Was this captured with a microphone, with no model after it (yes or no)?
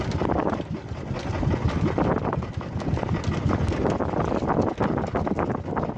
yes